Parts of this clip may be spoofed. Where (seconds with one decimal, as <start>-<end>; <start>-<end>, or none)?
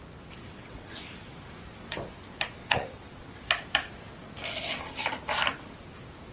0.6-1.1; 2.6-3.4